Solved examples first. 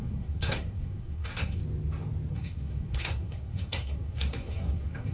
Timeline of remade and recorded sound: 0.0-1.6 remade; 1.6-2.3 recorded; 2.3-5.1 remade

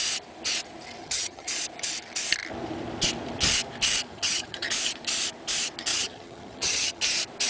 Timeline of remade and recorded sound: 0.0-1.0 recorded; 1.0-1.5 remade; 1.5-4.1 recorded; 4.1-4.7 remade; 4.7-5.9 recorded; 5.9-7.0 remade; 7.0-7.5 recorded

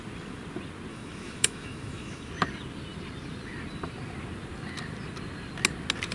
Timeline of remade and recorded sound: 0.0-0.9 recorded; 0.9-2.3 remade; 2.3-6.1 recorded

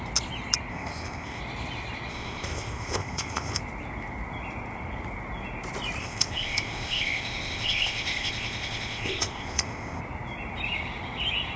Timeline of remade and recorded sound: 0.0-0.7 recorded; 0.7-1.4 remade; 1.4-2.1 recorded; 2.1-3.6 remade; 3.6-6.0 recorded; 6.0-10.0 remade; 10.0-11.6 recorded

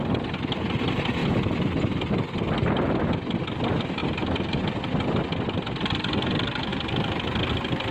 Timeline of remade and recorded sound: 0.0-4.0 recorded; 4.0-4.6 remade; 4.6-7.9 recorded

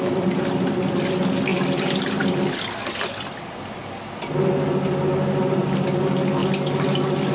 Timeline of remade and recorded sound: 0.0-7.3 recorded

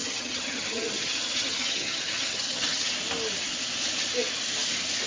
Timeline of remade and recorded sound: 0.0-2.9 remade; 2.9-5.1 recorded